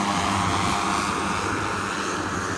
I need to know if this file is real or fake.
real